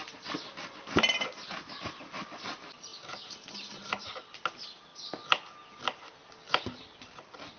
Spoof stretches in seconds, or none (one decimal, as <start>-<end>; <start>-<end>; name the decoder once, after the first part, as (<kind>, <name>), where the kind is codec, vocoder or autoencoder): none